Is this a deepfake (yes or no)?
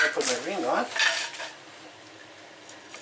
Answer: no